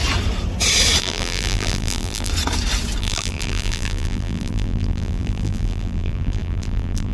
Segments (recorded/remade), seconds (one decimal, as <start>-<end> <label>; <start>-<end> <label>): 0.0-1.0 recorded; 1.0-2.3 remade; 2.3-3.0 recorded; 3.0-7.1 remade